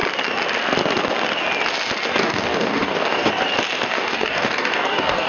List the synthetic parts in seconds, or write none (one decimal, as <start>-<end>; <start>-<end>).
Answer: 2.2-3.3; 3.9-5.3